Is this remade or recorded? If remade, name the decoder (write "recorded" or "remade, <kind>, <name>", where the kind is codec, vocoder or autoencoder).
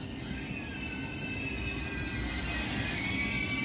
recorded